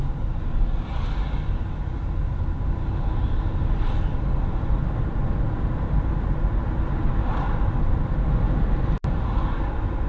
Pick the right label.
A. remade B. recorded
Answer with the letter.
B